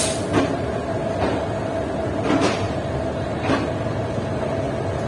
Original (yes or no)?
yes